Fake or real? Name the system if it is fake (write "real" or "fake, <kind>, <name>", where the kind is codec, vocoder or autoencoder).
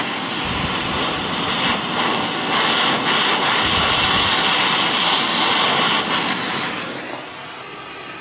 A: real